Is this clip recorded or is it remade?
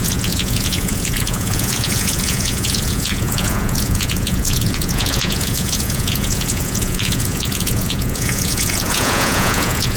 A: remade